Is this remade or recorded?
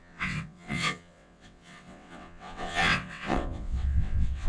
remade